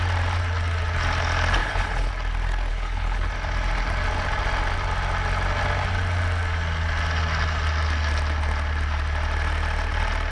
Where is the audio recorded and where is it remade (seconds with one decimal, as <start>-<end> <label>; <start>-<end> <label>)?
0.0-1.6 recorded; 1.6-2.1 remade; 2.1-2.7 recorded; 2.7-3.3 remade; 3.3-10.3 recorded